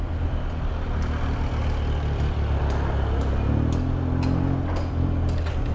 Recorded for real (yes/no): yes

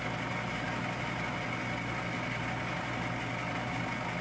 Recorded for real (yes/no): yes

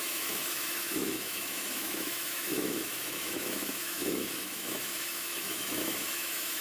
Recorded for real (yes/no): no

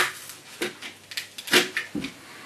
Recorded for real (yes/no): yes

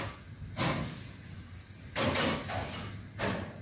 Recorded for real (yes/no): yes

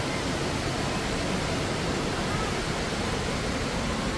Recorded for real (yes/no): yes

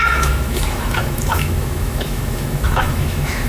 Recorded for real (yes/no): no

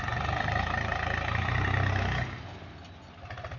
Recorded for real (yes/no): yes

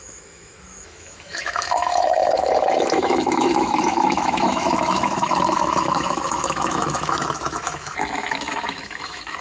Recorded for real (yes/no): no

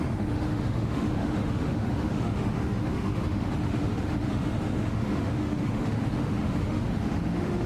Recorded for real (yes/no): no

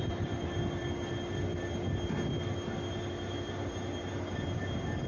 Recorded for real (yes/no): yes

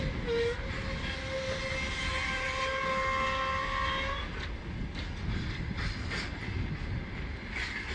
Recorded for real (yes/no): yes